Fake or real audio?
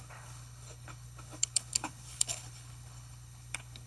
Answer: fake